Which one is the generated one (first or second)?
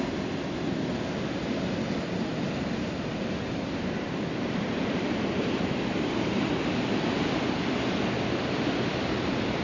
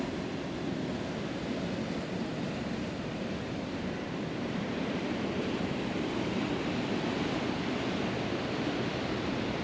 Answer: second